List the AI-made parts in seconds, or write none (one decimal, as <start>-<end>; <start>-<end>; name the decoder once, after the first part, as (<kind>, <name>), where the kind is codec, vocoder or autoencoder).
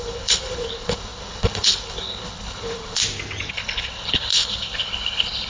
0.0-3.0 (codec, HILCodec); 3.5-5.5